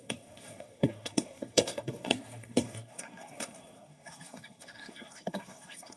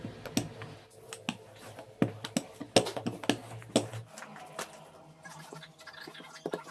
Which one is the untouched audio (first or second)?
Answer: second